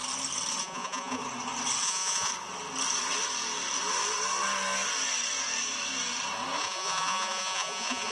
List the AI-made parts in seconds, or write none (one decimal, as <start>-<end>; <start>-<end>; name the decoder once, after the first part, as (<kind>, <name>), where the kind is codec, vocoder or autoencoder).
0.6-1.2 (vocoder, Vocos); 1.8-2.3; 6.6-8.1

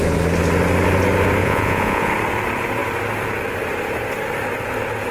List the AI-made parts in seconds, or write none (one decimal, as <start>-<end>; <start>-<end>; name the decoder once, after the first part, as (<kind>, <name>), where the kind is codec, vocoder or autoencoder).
1.4-2.1 (vocoder, Vocos)

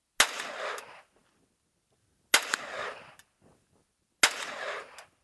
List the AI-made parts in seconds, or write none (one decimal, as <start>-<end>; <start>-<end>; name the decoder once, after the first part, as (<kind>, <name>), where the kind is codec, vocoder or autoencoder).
none

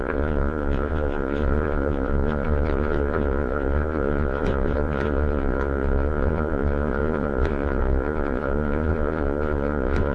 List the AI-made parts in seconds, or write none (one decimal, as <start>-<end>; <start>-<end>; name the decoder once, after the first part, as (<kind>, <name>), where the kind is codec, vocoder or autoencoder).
0.0-10.1 (vocoder, Vocos)

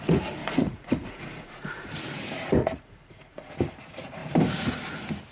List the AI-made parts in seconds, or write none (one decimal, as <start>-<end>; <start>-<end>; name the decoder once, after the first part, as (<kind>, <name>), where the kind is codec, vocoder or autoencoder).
0.4-1.9 (vocoder, Vocos); 2.6-3.5

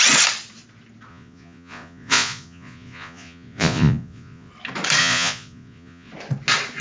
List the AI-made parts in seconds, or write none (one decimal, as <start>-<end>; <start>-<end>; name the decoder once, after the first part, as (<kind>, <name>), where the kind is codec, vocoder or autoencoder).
1.1-4.5 (vocoder, Vocos); 5.0-6.1

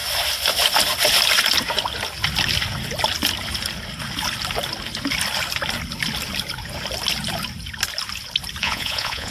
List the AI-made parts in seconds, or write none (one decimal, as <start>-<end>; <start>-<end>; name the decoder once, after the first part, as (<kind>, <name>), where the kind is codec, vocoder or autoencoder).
8.6-9.3 (vocoder, Vocos)

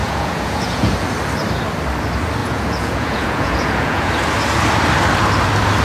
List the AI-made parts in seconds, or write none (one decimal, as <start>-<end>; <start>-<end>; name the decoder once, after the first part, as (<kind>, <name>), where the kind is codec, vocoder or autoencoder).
0.0-0.9 (vocoder, Vocos); 2.4-4.1